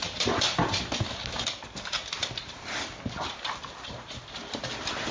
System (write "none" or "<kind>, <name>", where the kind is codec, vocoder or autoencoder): none